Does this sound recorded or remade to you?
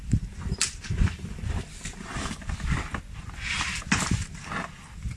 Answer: remade